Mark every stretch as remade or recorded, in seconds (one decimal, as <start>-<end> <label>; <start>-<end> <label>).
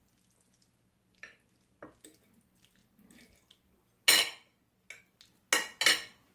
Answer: 0.0-6.3 recorded